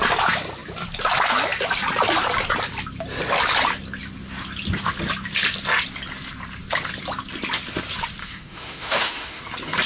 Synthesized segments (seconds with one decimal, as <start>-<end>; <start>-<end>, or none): 8.2-9.4